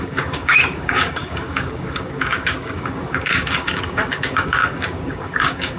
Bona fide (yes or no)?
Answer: no